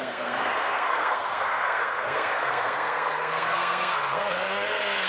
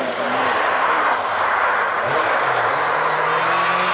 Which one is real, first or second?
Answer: second